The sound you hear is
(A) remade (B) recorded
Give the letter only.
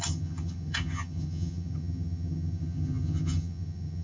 A